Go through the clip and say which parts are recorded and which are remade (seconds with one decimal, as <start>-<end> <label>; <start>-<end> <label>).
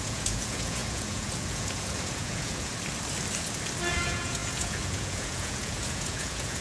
0.0-2.7 remade; 2.7-3.9 recorded; 3.9-6.6 remade